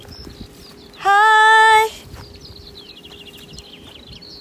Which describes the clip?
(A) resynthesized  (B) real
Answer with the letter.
B